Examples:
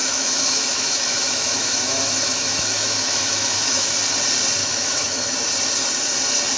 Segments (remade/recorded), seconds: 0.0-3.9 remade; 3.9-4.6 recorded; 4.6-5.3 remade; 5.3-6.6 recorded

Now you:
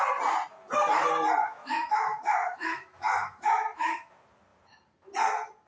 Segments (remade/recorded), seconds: 0.0-1.4 recorded; 1.4-4.1 remade; 4.1-5.7 recorded

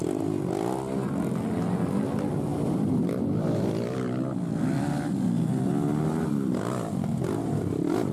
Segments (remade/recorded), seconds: 0.0-8.1 recorded

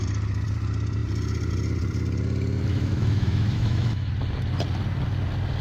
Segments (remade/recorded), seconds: 0.0-2.7 recorded; 2.7-4.1 remade; 4.1-5.6 recorded